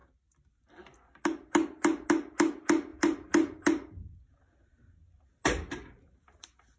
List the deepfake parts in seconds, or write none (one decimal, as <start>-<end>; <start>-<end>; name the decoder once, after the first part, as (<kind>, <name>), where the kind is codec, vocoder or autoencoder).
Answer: none